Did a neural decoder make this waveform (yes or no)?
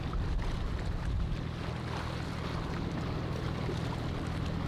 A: no